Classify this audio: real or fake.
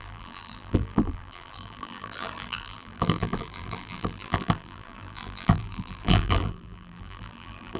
fake